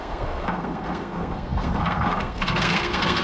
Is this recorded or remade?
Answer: remade